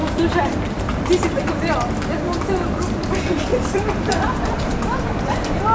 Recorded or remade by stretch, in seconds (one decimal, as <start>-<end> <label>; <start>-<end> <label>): 0.0-1.7 remade; 1.7-3.5 recorded; 3.5-4.1 remade; 4.1-5.7 recorded